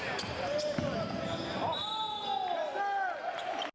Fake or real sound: real